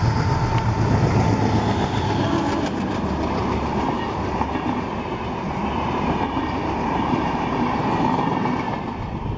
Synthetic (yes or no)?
no